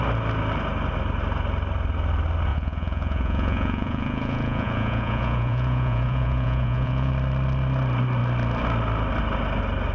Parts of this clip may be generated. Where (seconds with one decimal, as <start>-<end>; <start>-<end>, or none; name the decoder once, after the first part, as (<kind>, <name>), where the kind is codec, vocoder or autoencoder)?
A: 2.5-7.1 (vocoder, Vocos)